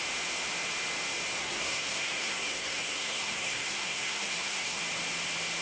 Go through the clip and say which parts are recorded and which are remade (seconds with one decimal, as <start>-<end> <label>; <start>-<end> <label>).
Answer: 0.0-1.4 recorded; 1.4-4.8 remade; 4.8-5.6 recorded